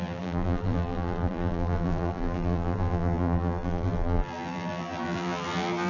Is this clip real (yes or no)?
no